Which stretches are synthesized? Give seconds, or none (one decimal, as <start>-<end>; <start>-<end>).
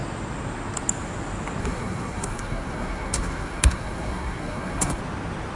1.6-5.0